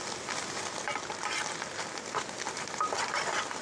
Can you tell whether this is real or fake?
real